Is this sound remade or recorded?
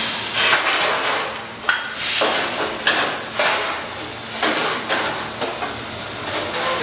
recorded